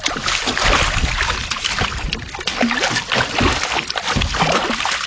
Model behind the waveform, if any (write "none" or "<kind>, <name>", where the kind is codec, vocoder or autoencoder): none